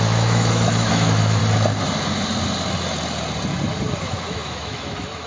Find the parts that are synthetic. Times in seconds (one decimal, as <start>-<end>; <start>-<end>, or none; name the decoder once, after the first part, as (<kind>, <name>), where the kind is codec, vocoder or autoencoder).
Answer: 0.0-1.4 (autoencoder, DAC-VAE); 4.0-5.3